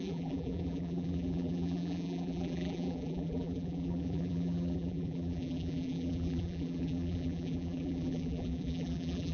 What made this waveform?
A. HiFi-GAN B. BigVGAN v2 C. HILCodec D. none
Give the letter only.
B